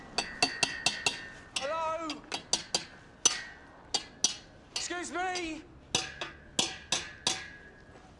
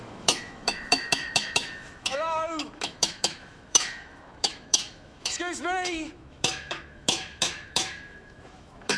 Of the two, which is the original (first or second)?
first